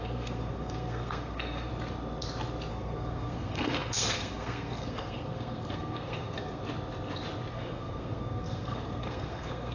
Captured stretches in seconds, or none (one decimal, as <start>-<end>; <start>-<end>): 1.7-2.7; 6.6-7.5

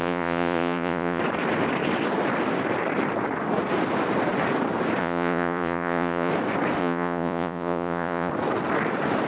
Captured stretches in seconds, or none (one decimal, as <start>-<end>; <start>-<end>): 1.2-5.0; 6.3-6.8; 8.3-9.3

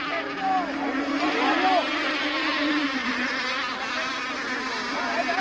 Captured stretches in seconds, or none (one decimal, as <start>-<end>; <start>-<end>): 0.0-5.4